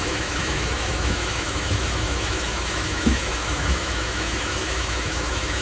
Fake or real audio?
fake